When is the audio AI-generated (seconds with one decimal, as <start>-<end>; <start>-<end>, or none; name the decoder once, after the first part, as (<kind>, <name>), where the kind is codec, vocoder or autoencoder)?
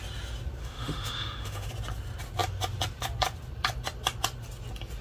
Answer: 0.6-1.7 (autoencoder, DAC-VAE)